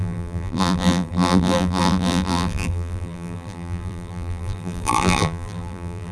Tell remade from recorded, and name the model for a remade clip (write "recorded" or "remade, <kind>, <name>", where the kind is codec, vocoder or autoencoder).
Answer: remade, vocoder, BigVGAN v2